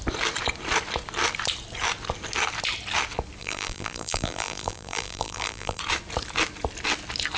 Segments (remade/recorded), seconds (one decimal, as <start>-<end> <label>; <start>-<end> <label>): 0.0-3.4 recorded; 3.4-5.8 remade; 5.8-7.4 recorded